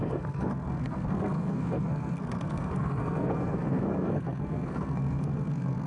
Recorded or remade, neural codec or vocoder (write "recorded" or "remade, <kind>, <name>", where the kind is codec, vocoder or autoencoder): remade, codec, SNAC